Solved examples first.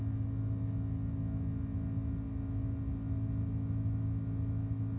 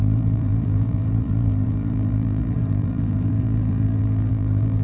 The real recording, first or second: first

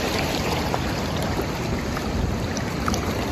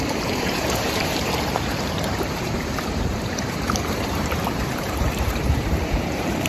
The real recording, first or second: first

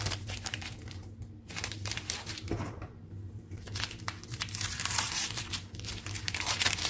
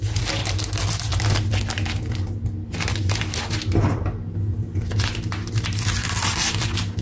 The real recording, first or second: second